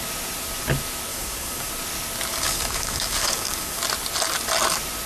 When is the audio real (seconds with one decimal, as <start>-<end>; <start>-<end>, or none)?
0.0-1.1; 1.7-2.3; 3.8-5.1